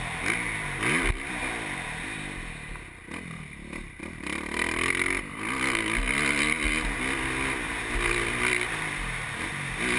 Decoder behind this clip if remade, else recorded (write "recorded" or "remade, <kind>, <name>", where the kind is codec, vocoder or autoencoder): recorded